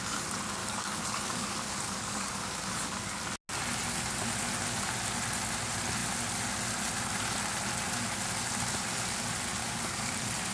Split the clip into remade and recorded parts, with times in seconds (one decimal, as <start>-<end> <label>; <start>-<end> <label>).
0.0-0.6 recorded; 0.6-3.2 remade; 3.2-9.6 recorded; 9.6-10.1 remade; 10.1-10.5 recorded

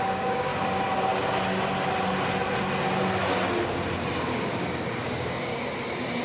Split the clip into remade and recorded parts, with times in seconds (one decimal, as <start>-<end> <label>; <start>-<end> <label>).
0.0-0.5 remade; 0.5-4.2 recorded; 4.2-5.5 remade; 5.5-6.2 recorded

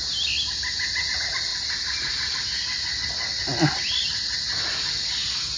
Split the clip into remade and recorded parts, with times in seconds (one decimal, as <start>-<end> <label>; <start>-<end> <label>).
0.0-5.6 recorded

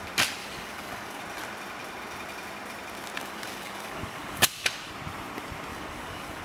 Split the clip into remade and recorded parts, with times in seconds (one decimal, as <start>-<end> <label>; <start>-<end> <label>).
0.0-0.4 recorded; 0.4-1.2 remade; 1.2-3.2 recorded; 3.2-4.9 remade; 4.9-5.7 recorded; 5.7-6.4 remade

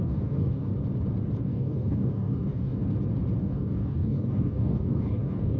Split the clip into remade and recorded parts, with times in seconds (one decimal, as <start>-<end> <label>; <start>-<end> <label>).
0.0-0.7 remade; 0.7-1.4 recorded; 1.4-2.8 remade; 2.8-3.4 recorded; 3.4-5.6 remade

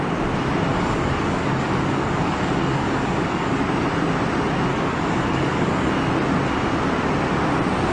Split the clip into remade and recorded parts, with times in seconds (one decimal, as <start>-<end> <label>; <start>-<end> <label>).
0.0-0.7 recorded; 0.7-3.6 remade; 3.6-4.7 recorded; 4.7-5.9 remade; 5.9-7.9 recorded

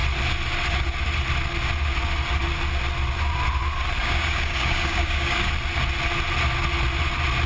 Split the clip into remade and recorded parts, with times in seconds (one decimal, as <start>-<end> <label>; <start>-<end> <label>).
0.0-4.0 recorded; 4.0-5.5 remade; 5.5-7.5 recorded

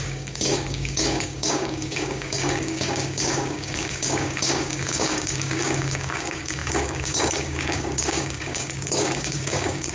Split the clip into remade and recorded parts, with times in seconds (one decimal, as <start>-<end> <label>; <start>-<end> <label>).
0.0-9.9 remade